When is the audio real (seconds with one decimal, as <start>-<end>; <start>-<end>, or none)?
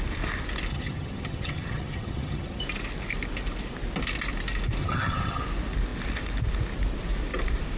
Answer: 0.0-0.7; 2.6-4.8; 5.4-7.8